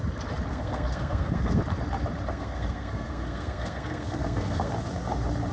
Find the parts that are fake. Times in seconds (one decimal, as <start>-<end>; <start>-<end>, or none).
0.5-1.6; 2.3-4.7

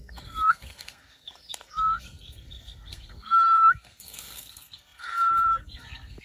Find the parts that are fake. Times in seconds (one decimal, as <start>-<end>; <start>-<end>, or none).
0.0-6.2

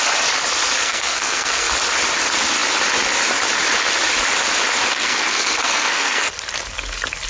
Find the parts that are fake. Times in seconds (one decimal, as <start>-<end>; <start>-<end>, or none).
0.8-1.7; 4.9-6.3

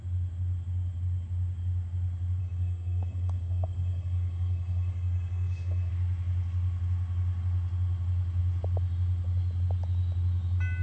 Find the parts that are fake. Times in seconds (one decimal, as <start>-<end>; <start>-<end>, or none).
2.4-5.9

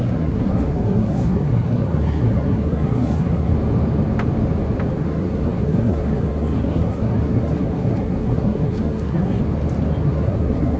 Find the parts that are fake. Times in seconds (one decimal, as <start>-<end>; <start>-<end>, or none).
0.0-3.5; 4.9-9.4; 10.0-10.8

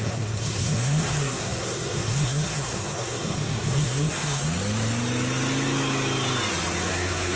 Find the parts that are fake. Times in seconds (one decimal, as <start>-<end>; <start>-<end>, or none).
0.0-4.4; 6.9-7.4